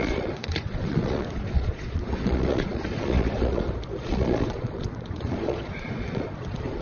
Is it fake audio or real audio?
fake